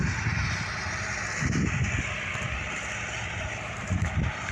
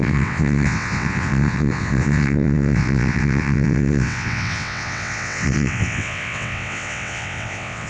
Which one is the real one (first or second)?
first